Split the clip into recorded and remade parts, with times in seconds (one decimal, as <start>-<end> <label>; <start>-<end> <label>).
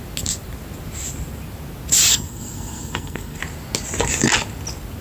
0.0-2.1 recorded; 2.1-3.4 remade; 3.4-5.0 recorded